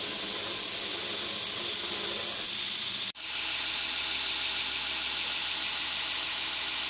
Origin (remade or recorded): recorded